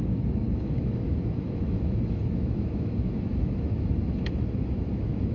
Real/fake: fake